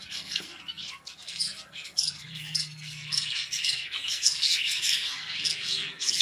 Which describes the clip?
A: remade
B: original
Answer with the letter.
A